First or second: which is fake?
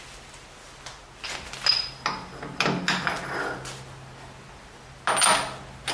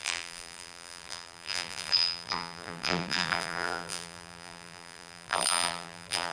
second